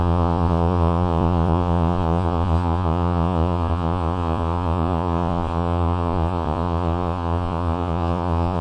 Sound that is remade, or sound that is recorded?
remade